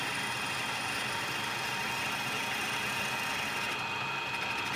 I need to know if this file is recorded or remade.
recorded